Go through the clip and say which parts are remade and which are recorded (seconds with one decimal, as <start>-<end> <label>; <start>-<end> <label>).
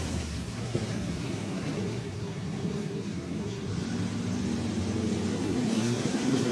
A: 0.0-3.8 remade; 3.8-5.3 recorded; 5.3-6.5 remade